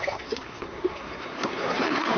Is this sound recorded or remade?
remade